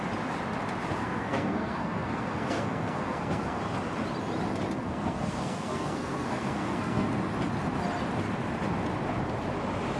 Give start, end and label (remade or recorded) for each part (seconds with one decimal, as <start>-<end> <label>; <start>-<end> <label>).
0.0-1.0 recorded; 1.0-3.6 remade; 3.6-4.8 recorded; 4.8-7.1 remade; 7.1-10.0 recorded